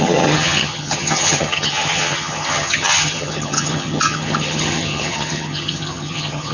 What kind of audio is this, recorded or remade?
remade